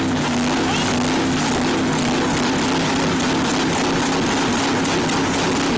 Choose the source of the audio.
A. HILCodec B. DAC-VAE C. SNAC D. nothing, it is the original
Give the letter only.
D